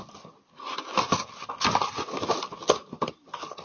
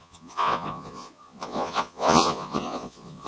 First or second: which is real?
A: first